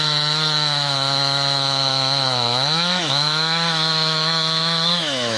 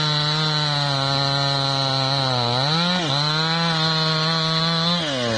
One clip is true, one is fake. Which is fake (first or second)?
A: first